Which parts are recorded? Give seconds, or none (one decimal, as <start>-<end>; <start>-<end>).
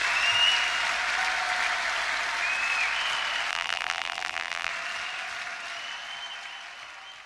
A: 0.0-3.5; 4.7-7.3